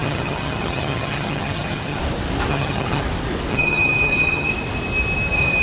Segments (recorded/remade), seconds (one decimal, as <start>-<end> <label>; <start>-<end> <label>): 0.0-2.0 remade; 2.0-2.5 recorded; 2.5-3.0 remade; 3.0-3.5 recorded; 3.5-4.5 remade; 4.5-5.6 recorded